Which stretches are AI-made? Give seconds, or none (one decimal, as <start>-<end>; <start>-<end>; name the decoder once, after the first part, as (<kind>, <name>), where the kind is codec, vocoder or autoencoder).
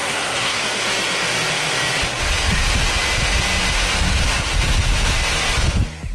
0.0-0.6 (codec, SNAC)